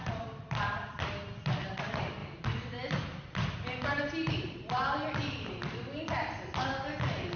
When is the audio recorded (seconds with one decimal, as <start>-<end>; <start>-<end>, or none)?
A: 0.0-7.4